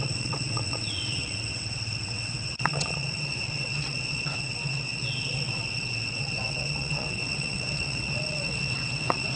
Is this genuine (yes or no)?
no